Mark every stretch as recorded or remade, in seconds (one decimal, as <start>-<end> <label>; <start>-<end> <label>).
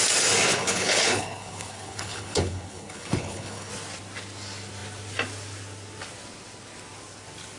0.0-0.5 recorded; 0.5-3.7 remade; 3.7-7.6 recorded